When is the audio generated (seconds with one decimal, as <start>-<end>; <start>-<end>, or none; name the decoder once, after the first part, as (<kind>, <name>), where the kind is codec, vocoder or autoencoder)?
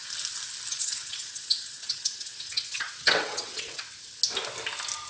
0.7-3.8 (vocoder, WaveNeXt)